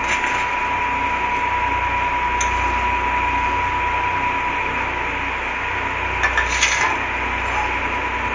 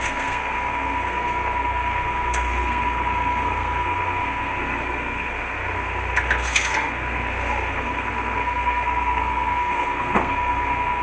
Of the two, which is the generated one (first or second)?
second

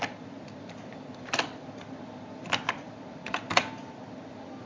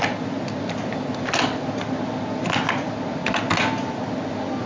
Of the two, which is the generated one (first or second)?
first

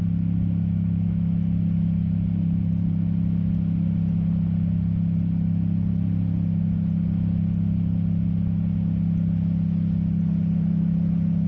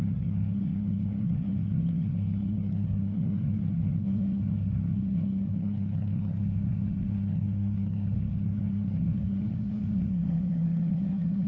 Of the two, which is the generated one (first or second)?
second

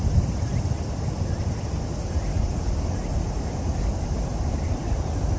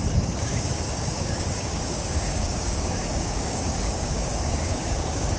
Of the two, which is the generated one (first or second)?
second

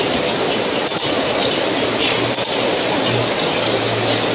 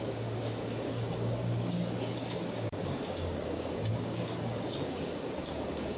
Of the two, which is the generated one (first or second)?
second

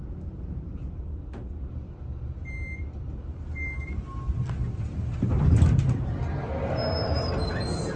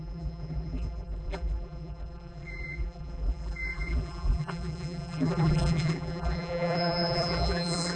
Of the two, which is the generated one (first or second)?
second